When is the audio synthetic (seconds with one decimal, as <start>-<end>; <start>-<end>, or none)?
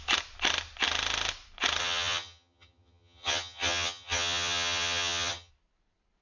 1.8-5.5